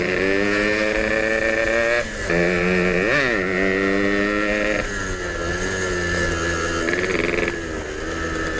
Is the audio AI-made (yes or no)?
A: no